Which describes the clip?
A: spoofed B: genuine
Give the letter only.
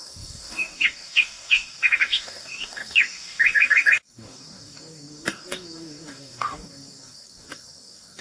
A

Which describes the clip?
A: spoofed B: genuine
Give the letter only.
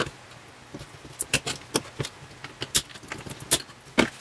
B